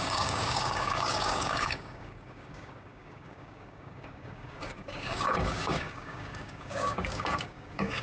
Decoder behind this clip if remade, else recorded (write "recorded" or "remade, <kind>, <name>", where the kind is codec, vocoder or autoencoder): remade, codec, DAC